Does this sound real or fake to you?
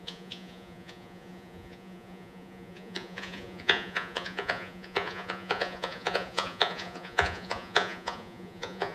fake